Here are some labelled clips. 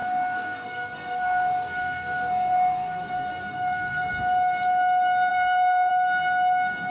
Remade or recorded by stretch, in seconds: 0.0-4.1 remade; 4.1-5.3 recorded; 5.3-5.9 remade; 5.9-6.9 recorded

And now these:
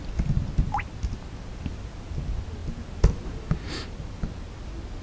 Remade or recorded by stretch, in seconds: 0.0-5.0 recorded

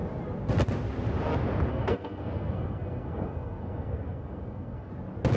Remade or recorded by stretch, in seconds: 0.0-1.7 recorded; 1.7-4.9 remade; 4.9-5.4 recorded

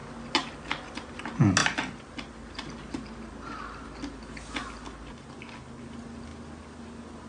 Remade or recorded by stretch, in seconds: 0.0-7.3 recorded

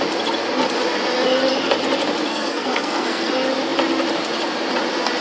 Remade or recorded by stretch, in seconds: 0.0-2.3 recorded; 2.3-3.3 remade; 3.3-5.2 recorded

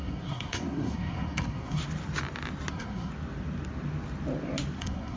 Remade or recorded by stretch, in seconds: 0.0-1.8 remade; 1.8-2.7 recorded; 2.7-3.1 remade; 3.1-4.8 recorded; 4.8-5.2 remade

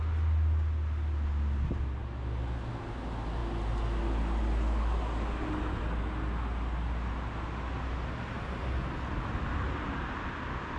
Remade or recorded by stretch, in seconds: 0.0-10.8 recorded

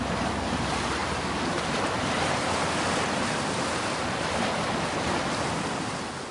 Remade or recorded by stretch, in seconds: 0.0-6.3 recorded